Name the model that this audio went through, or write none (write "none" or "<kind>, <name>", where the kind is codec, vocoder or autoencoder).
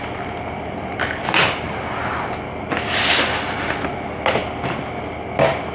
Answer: none